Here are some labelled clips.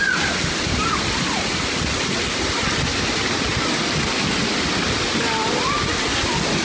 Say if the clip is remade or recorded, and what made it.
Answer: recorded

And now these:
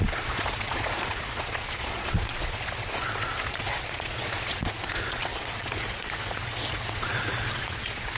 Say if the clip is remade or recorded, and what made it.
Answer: remade, vocoder, Vocos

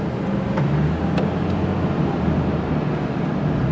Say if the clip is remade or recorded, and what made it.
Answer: recorded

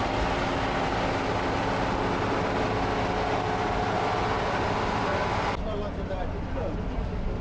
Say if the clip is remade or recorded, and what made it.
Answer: recorded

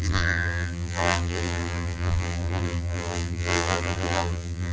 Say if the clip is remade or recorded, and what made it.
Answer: remade, vocoder, BigVGAN v2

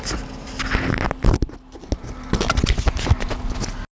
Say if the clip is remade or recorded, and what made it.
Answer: recorded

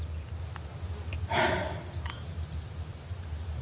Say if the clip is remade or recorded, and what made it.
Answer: recorded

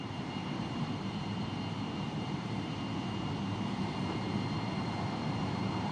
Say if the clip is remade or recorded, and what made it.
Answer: remade, vocoder, BigVGAN v2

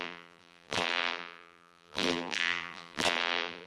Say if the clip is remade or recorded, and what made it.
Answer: remade, vocoder, BigVGAN v2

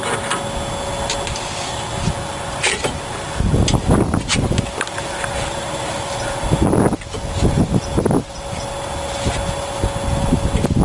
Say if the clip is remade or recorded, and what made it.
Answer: recorded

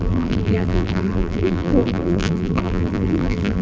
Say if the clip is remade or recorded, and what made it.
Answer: remade, vocoder, BigVGAN v2